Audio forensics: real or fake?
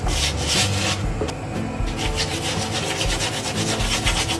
real